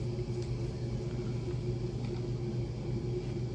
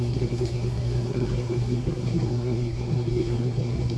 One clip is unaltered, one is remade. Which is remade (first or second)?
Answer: second